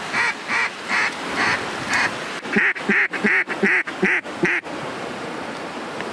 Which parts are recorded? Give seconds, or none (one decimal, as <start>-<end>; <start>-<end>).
0.0-6.1